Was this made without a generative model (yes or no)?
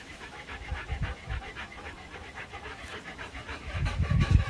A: no